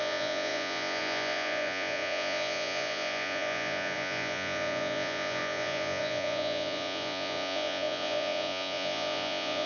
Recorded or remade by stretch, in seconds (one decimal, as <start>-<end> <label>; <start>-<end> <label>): 0.0-9.7 remade

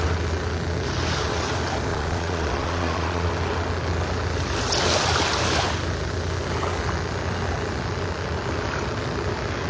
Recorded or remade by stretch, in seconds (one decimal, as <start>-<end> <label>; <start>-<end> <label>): 0.0-1.9 recorded; 1.9-3.3 remade; 3.3-9.7 recorded

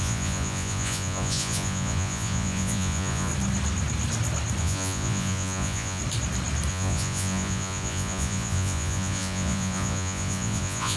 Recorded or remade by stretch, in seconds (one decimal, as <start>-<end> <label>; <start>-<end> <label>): 0.0-3.3 remade; 3.3-4.6 recorded; 4.6-6.0 remade; 6.0-6.7 recorded; 6.7-11.0 remade

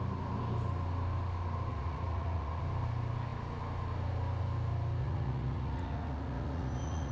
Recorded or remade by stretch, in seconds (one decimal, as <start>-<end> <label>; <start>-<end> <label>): 0.0-1.7 recorded; 1.7-2.6 remade; 2.6-5.0 recorded; 5.0-7.1 remade